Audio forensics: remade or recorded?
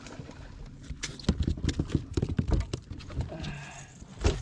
recorded